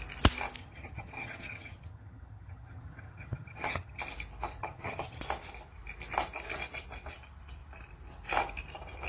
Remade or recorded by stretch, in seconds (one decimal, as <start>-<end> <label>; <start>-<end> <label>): 0.0-0.6 recorded; 0.6-4.0 remade; 4.0-4.6 recorded; 4.6-5.2 remade; 5.2-9.1 recorded